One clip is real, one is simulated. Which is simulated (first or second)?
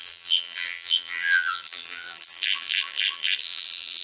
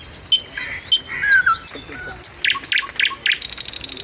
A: first